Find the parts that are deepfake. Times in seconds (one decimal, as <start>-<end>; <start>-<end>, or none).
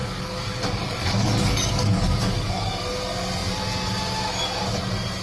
0.0-2.7